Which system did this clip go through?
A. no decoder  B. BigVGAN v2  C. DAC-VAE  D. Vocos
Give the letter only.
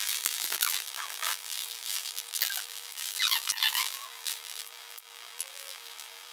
B